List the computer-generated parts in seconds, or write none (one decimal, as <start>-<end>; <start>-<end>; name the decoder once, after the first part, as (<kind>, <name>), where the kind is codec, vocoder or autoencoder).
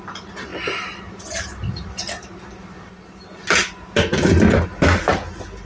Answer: 0.0-0.5 (vocoder, BigVGAN v2); 1.0-3.6; 4.5-5.1